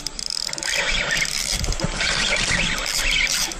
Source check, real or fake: fake